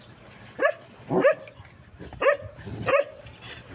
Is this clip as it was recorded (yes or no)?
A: yes